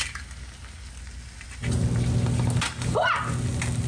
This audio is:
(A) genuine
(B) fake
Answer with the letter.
A